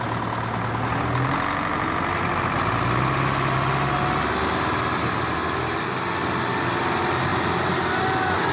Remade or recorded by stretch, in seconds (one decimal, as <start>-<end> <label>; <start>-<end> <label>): 0.0-8.5 recorded